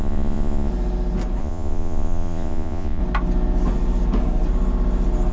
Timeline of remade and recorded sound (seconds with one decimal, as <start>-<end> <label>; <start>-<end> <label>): 0.0-0.7 remade; 0.7-1.4 recorded; 1.4-3.0 remade; 3.0-5.3 recorded